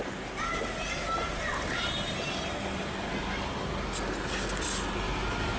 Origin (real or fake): real